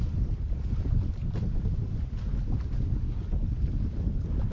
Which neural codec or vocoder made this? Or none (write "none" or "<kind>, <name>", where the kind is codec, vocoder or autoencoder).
none